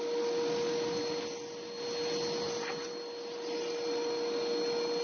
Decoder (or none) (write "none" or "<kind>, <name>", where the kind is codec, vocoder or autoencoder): none